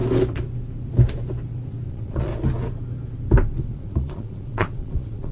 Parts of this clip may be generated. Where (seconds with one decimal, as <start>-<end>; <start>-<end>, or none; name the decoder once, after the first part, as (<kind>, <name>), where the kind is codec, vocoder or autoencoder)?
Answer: 1.9-2.3 (vocoder, Vocos); 3.6-5.3

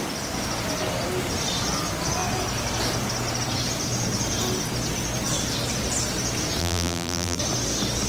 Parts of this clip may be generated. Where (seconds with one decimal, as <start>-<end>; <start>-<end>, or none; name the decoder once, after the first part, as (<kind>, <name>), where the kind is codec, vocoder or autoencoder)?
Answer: 6.6-7.4 (vocoder, BigVGAN v2)